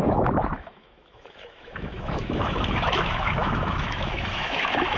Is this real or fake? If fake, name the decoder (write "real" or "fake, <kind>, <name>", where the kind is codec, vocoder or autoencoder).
fake, autoencoder, DAC-VAE